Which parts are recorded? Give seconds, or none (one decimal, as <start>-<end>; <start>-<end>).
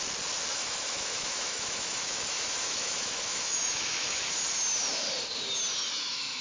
0.0-0.5; 4.3-5.8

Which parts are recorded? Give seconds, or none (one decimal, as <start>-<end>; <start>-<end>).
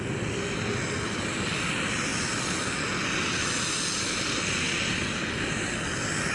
0.0-6.3